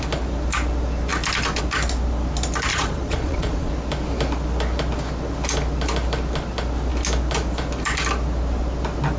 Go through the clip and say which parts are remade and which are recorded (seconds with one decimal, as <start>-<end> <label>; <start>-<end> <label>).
0.0-2.7 recorded; 2.7-3.7 remade; 3.7-9.2 recorded